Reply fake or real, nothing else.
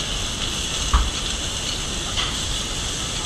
real